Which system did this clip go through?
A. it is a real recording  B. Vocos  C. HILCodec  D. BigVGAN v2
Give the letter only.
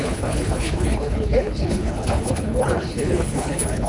C